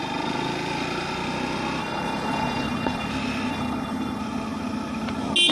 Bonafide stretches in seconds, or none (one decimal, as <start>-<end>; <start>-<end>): 0.0-1.8; 3.1-3.5; 4.2-5.5